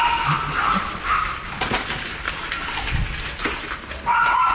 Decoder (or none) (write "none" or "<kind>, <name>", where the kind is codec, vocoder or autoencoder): none